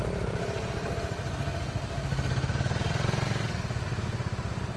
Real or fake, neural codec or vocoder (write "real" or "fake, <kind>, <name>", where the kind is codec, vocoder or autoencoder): real